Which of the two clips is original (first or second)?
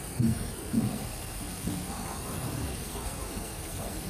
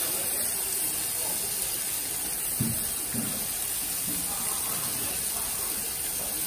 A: second